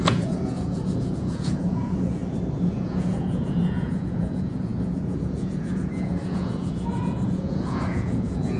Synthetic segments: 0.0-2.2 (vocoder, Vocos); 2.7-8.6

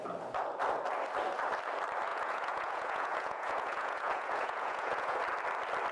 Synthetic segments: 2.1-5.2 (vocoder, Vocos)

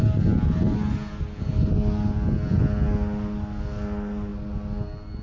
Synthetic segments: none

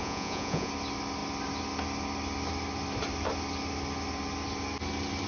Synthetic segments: 0.0-0.7 (vocoder, Vocos)

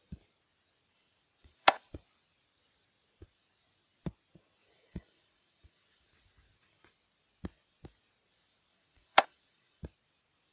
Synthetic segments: 1.4-1.9 (vocoder, Vocos); 4.6-6.1; 8.7-9.8

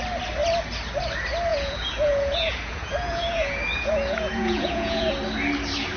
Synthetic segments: 1.5-5.1 (vocoder, Vocos)